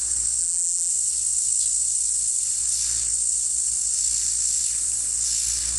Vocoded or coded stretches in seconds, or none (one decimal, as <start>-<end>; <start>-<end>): 0.4-0.9